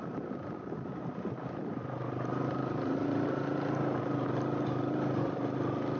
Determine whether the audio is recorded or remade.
recorded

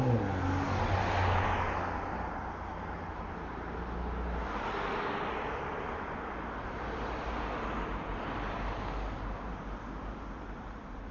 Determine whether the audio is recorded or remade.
recorded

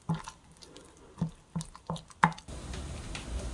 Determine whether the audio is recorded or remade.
recorded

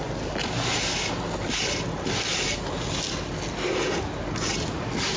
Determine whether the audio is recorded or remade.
recorded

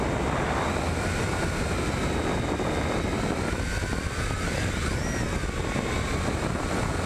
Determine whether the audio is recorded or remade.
recorded